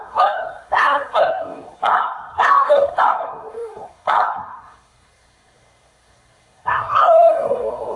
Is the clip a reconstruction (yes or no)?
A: yes